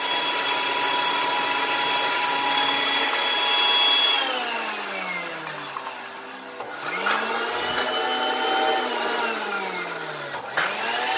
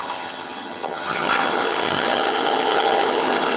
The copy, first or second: second